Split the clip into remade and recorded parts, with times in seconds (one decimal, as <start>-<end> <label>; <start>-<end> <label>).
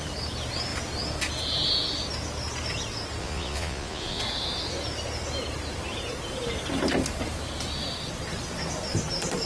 0.0-3.2 recorded; 3.2-4.2 remade; 4.2-9.5 recorded